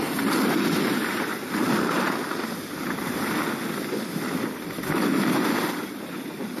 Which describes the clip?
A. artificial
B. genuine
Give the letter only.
B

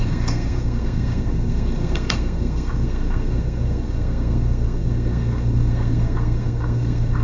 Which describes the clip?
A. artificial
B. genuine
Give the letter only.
A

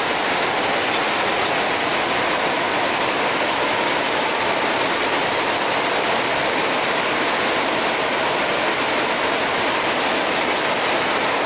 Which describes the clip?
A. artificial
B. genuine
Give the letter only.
B